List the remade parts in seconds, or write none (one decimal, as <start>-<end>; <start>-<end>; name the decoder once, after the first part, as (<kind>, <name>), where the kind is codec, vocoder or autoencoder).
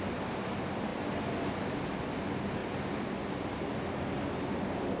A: none